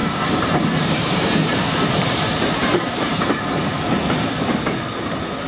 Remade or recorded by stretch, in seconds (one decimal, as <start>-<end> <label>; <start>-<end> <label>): 0.0-3.3 remade; 3.3-5.5 recorded